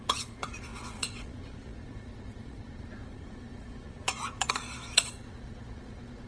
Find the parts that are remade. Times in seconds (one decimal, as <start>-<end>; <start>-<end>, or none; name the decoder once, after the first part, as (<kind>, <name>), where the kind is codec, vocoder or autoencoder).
0.0-6.3 (vocoder, Vocos)